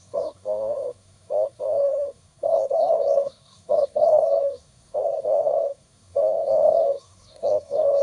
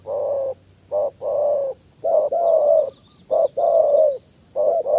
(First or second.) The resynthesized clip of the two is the first